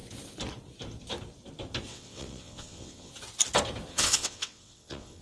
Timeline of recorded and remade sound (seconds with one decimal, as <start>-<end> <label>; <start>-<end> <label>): 0.0-1.9 recorded; 1.9-3.1 remade; 3.1-3.9 recorded; 3.9-5.2 remade